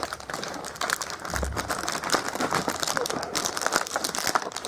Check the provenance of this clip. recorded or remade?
recorded